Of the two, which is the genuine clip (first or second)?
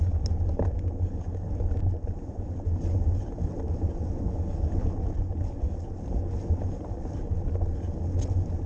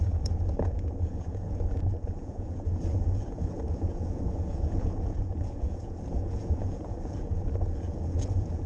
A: first